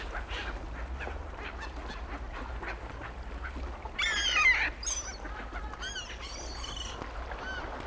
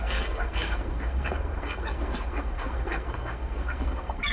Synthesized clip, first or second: second